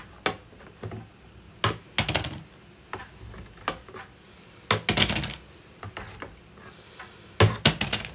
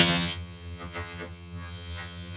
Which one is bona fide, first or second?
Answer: first